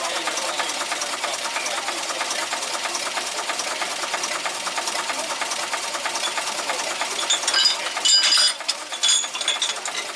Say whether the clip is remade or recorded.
recorded